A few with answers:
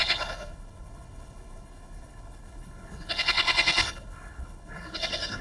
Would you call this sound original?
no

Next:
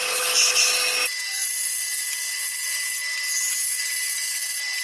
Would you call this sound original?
yes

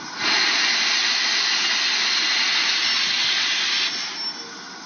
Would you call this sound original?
yes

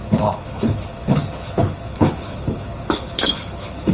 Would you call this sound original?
no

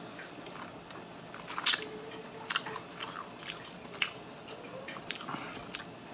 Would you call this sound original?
yes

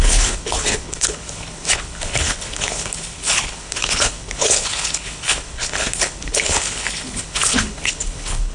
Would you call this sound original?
no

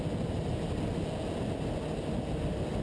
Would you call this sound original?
yes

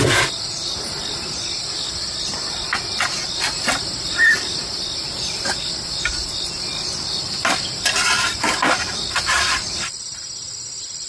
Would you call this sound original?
yes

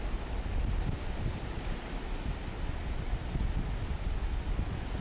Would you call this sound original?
yes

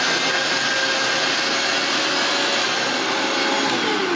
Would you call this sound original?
yes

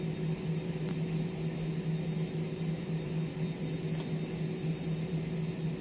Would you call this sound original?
yes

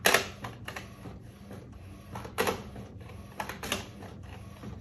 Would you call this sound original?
yes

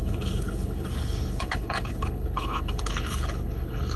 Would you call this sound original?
no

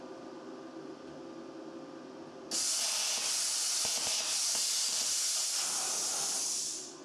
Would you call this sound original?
yes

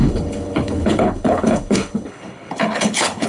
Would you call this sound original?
no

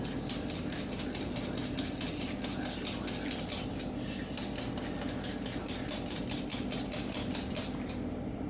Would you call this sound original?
yes